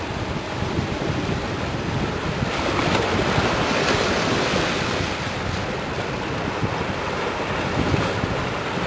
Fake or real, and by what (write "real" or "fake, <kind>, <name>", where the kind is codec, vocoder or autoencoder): real